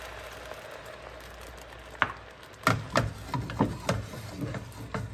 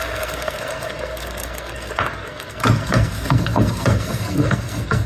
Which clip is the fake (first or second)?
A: second